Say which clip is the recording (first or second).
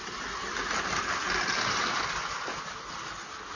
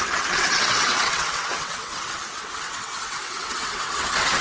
first